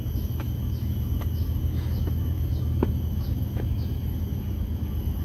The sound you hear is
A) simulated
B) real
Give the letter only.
A